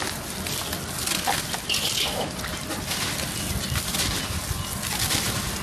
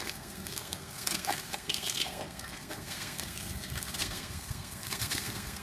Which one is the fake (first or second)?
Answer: second